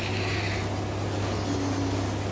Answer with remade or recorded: recorded